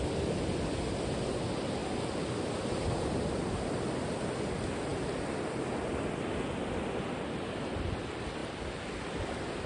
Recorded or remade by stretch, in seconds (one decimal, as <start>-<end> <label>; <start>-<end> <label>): 0.0-9.7 recorded